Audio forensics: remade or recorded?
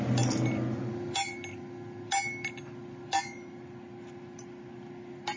recorded